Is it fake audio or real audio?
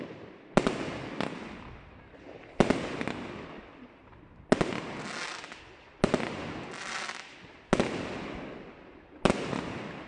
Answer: real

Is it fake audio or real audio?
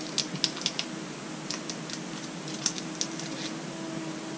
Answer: real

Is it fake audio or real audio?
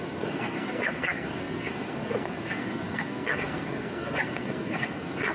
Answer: fake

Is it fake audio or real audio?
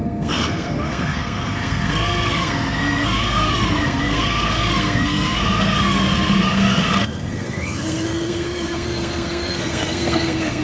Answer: fake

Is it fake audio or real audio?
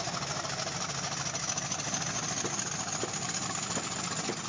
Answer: real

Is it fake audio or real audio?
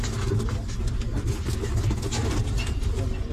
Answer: real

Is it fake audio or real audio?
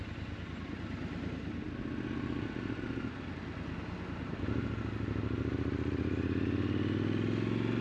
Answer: real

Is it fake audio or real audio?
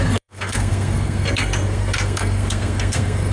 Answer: fake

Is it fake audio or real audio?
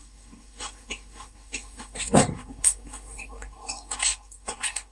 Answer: fake